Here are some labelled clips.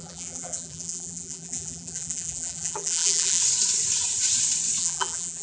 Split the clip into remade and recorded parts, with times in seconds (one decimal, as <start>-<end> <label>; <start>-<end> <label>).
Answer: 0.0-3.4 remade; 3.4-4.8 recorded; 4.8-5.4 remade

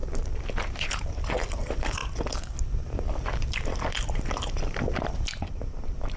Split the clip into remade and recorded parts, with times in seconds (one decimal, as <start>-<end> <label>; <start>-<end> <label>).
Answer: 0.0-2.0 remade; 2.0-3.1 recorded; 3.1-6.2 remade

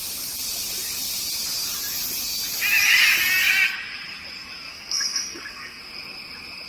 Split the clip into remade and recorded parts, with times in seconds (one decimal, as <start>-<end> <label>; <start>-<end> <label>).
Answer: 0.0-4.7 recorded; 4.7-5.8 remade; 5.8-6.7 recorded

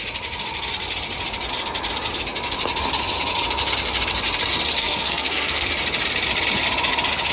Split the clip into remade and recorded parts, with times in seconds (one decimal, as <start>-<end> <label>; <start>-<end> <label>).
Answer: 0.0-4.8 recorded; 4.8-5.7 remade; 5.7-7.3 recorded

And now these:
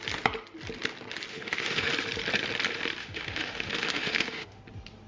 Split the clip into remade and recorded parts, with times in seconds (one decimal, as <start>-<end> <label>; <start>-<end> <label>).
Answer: 0.0-1.3 recorded; 1.3-1.9 remade; 1.9-3.0 recorded; 3.0-4.6 remade; 4.6-5.1 recorded